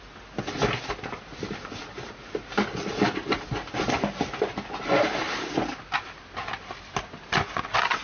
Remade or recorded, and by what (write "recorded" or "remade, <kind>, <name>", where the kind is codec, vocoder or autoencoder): recorded